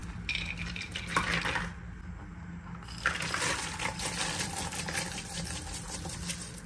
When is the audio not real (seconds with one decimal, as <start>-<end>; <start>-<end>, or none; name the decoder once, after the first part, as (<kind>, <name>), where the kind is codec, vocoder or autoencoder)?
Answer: none

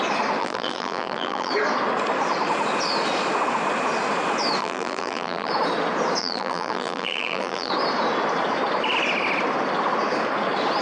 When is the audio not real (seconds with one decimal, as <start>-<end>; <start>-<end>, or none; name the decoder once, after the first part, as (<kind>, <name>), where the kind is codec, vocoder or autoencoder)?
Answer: 0.4-1.5 (vocoder, BigVGAN v2); 4.6-5.5; 6.2-7.7

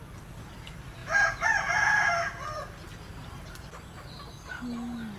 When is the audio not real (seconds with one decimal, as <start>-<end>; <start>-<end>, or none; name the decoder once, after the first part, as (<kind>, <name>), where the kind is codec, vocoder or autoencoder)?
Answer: 1.0-1.9 (vocoder, Vocos)

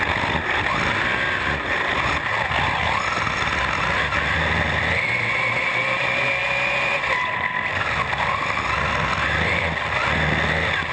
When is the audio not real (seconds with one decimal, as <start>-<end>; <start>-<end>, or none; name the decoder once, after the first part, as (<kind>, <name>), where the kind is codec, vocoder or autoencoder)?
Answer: none